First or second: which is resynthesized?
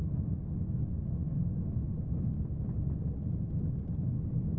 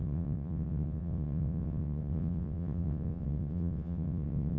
second